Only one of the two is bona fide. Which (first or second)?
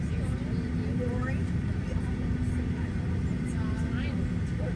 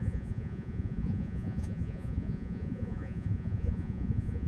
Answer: first